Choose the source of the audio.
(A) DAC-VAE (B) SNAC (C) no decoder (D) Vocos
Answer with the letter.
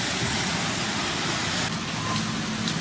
C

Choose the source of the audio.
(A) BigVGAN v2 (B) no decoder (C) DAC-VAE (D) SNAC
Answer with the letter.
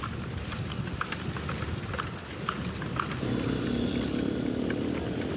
B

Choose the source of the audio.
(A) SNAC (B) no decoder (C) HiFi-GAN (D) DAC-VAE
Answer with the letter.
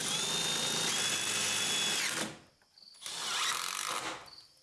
B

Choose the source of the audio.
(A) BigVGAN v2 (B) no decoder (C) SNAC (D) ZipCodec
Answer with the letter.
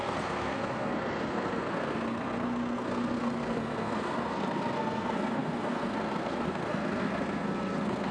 C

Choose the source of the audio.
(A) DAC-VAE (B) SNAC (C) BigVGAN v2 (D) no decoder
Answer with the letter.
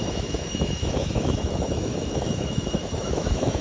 A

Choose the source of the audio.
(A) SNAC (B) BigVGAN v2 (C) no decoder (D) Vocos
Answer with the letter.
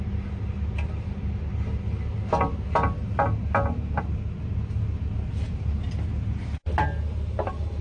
C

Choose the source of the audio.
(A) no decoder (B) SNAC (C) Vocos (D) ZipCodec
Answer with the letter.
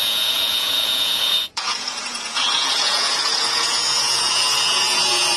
C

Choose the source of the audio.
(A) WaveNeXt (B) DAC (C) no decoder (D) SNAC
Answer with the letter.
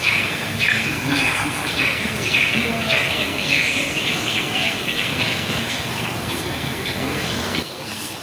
D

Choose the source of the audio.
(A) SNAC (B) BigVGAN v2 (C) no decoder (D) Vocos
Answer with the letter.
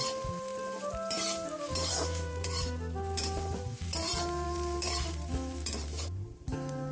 B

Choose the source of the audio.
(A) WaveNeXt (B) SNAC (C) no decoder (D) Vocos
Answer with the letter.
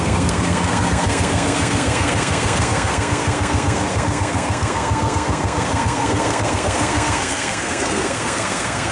B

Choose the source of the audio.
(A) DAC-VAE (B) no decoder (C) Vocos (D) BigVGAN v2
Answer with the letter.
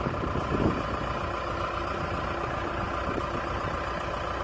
B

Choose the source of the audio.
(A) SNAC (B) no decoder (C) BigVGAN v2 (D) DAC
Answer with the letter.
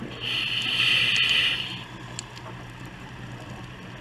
B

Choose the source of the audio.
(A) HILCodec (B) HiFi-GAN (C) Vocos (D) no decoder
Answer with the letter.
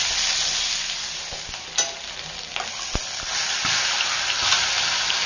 D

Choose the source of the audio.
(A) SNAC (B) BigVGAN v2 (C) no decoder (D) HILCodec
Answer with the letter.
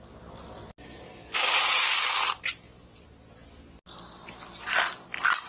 C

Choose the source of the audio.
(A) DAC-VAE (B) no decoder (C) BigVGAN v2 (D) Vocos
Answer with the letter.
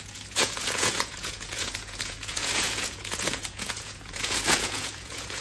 D